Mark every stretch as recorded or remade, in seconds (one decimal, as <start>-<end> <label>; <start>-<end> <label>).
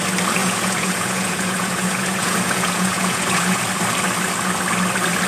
0.0-0.4 recorded; 0.4-3.6 remade; 3.6-5.3 recorded